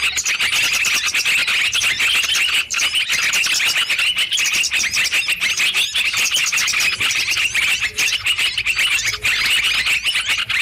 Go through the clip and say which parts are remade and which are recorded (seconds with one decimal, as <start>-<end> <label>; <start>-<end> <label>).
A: 0.0-5.9 recorded; 5.9-8.8 remade; 8.8-10.6 recorded